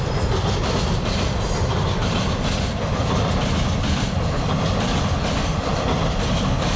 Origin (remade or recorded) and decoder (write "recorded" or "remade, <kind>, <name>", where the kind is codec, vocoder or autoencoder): recorded